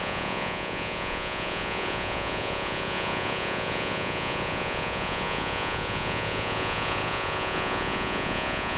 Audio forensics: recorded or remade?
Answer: remade